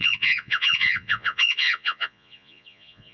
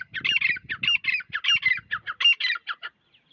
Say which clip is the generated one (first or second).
first